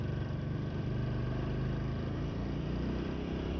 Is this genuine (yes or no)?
no